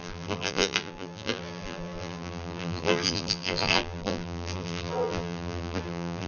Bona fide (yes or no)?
no